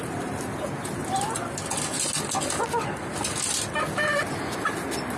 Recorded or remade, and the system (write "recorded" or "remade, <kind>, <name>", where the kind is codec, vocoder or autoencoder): recorded